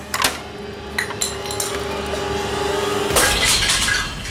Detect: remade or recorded recorded